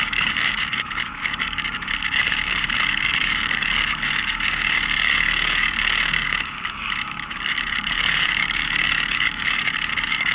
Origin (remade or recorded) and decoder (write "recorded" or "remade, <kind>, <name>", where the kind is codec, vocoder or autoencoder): remade, codec, DAC